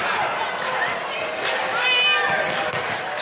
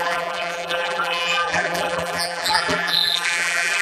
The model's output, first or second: second